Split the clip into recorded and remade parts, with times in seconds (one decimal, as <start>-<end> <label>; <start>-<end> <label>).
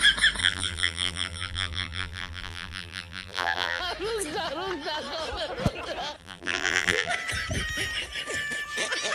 0.0-0.4 recorded; 0.4-3.8 remade; 3.8-6.2 recorded; 6.2-7.1 remade; 7.1-9.1 recorded